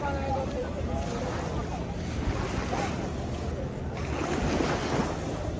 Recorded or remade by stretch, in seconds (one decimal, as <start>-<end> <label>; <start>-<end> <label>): 0.0-5.6 recorded